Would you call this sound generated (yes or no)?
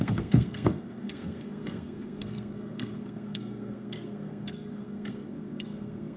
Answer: yes